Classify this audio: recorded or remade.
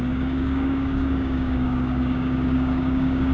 remade